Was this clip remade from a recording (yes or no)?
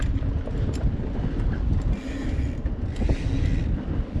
no